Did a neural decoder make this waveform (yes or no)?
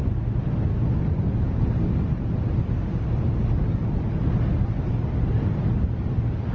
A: no